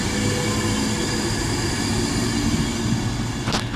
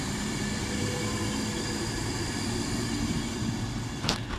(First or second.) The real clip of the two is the first